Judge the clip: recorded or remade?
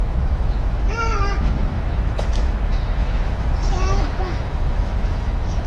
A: remade